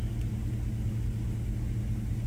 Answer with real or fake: real